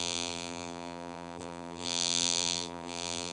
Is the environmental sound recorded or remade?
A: remade